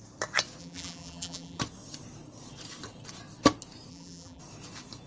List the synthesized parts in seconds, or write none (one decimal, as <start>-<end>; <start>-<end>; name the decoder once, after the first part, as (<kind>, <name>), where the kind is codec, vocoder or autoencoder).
0.6-1.6 (vocoder, BigVGAN v2); 3.9-4.4